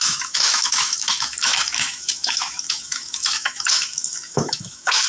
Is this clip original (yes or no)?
no